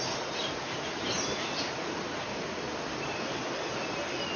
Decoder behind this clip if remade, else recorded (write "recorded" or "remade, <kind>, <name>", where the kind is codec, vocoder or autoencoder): recorded